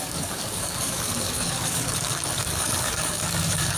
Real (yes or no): no